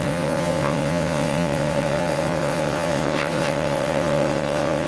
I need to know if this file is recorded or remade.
remade